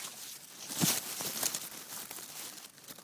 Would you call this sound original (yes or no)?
yes